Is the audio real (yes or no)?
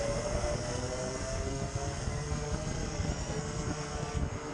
no